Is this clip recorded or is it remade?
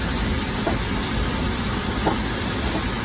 recorded